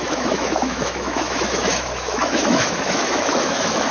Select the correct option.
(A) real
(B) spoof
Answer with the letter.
B